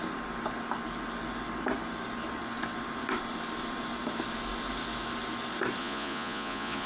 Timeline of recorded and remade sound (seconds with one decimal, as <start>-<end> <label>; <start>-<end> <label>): 0.0-5.8 recorded; 5.8-6.9 remade